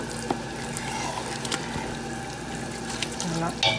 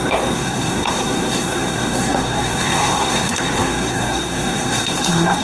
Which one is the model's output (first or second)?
second